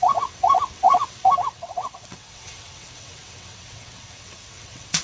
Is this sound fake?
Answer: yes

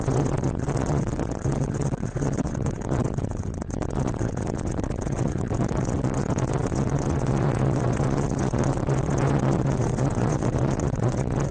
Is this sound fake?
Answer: yes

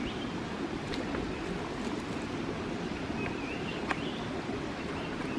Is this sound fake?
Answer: no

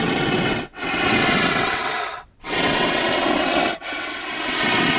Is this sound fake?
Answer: yes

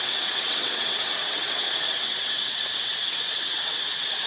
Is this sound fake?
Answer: yes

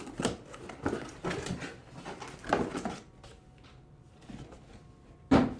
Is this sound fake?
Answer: no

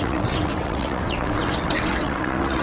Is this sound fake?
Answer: yes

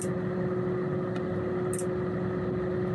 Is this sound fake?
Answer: no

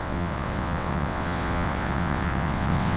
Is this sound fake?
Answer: yes